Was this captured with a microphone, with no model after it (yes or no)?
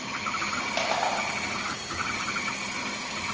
yes